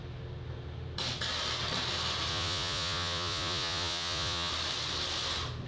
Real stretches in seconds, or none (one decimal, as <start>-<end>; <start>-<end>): 0.0-2.3; 4.5-5.7